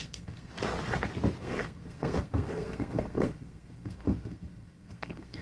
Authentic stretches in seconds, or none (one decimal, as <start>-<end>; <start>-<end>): 0.5-1.4